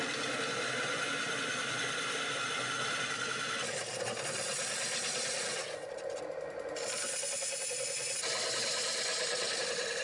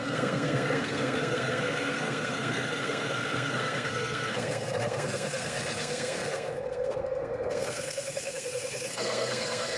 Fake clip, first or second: second